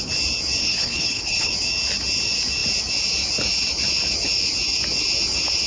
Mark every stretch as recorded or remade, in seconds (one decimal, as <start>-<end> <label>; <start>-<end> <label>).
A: 0.0-0.6 recorded; 0.6-1.5 remade; 1.5-5.7 recorded

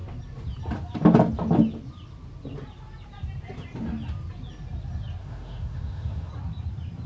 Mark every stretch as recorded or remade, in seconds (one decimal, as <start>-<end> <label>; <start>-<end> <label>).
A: 0.0-5.2 recorded; 5.2-6.3 remade; 6.3-7.1 recorded

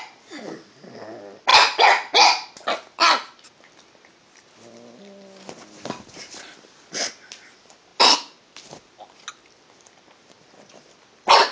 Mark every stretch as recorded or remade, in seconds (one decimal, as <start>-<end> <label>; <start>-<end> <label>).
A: 0.0-11.5 recorded

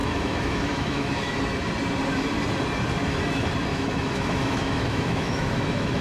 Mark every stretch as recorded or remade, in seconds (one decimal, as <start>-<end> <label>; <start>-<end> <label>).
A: 0.0-1.4 remade; 1.4-3.7 recorded; 3.7-6.0 remade